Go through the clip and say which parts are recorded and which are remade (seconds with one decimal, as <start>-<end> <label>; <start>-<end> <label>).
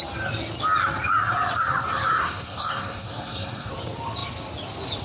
0.0-2.1 recorded; 2.1-3.7 remade; 3.7-5.0 recorded